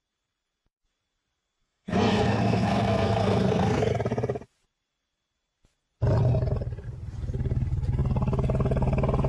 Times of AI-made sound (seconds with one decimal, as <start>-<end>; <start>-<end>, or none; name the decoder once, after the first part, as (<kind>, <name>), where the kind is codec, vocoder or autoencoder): 1.6-3.9 (codec, SNAC)